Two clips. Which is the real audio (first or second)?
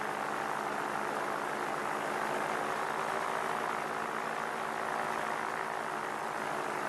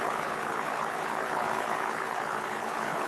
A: first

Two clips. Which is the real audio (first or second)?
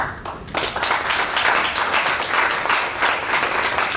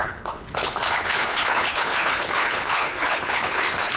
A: first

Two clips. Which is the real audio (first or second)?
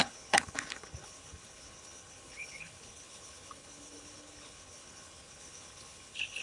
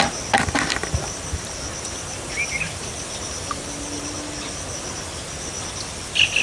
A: second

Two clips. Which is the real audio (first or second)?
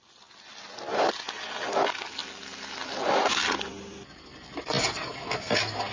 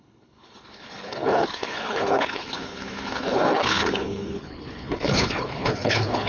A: first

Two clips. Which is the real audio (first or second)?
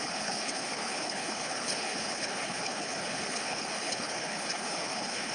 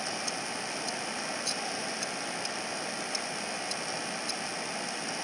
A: second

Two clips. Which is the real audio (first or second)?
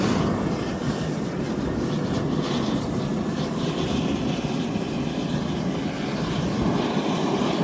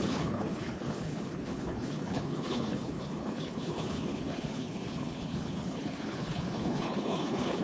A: first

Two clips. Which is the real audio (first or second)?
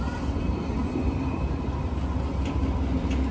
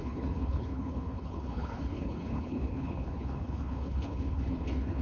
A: first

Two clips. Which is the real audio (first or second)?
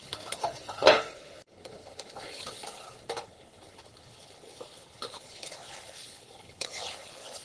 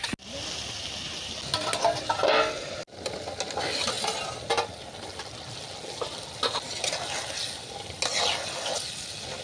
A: second